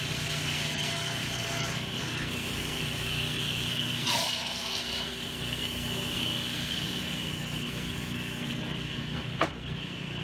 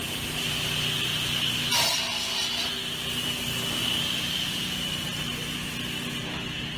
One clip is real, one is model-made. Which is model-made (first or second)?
first